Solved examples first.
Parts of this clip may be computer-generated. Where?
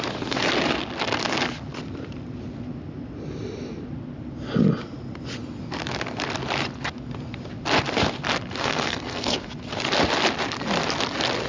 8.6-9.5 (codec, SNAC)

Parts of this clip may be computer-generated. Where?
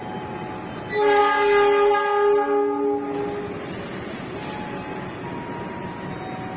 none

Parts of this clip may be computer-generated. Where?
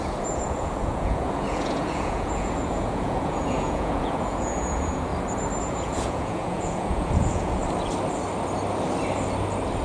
0.0-5.1 (vocoder, Vocos); 5.6-7.6